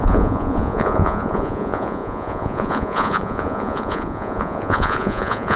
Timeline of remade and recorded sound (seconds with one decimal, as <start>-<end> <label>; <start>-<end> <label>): 0.0-5.6 remade